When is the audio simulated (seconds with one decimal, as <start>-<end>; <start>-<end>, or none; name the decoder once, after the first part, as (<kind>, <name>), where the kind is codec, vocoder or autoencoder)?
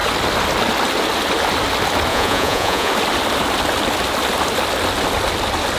2.1-2.9 (vocoder, Vocos)